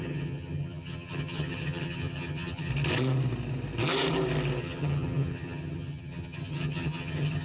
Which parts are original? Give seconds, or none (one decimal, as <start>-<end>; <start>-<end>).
2.7-4.6